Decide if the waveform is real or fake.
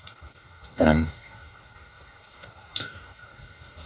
fake